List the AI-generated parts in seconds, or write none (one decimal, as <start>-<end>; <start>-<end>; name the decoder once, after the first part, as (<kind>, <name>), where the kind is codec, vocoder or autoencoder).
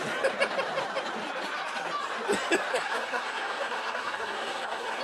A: 2.7-5.0 (codec, SNAC)